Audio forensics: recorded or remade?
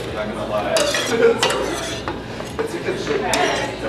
recorded